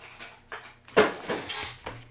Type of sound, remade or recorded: recorded